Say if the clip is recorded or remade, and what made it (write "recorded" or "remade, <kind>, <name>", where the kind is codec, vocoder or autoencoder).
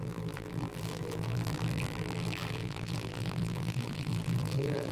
remade, vocoder, BigVGAN v2